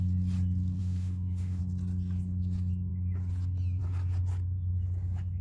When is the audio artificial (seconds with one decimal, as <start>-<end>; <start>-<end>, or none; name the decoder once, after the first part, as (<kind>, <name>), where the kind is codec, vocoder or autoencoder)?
0.8-1.6 (autoencoder, DAC-VAE)